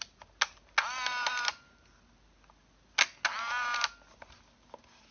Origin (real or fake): real